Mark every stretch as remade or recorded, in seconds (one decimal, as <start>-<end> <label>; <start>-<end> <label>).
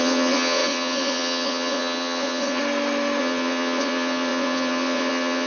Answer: 0.0-2.6 remade; 2.6-3.2 recorded; 3.2-5.5 remade